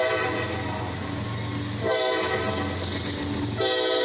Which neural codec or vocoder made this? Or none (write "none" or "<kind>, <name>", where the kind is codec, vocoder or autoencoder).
none